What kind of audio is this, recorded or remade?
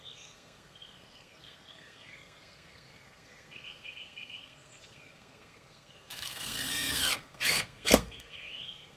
remade